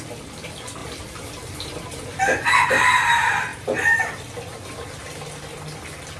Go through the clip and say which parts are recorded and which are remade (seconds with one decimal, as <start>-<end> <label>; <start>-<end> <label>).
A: 0.0-0.8 recorded; 0.8-2.2 remade; 2.2-3.5 recorded; 3.5-4.3 remade; 4.3-6.2 recorded